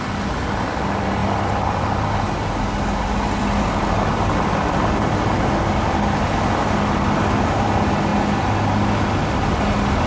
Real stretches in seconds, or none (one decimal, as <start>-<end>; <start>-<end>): 0.0-10.1

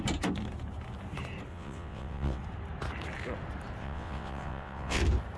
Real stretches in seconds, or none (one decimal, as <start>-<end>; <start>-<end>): 0.0-1.5; 2.4-3.8; 5.0-5.4

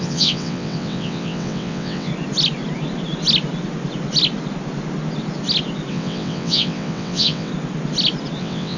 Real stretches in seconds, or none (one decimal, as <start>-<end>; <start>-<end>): 2.1-5.9; 7.5-8.4

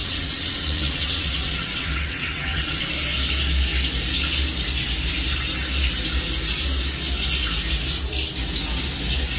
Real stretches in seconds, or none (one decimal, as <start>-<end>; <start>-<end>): 2.8-9.4

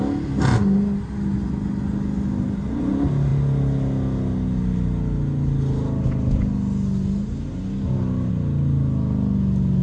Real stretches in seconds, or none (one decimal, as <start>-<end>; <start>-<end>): 0.0-9.8

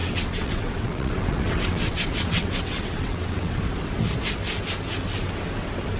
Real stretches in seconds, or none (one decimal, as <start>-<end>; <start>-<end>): 3.6-6.0

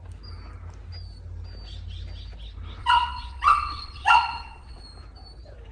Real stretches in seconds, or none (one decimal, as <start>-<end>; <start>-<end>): 0.0-2.8; 4.8-5.7